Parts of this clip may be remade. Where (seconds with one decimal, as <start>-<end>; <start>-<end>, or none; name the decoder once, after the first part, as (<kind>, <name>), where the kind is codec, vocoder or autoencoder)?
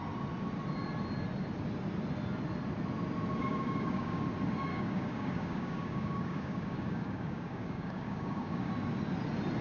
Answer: 3.4-4.2 (codec, DAC); 4.7-8.7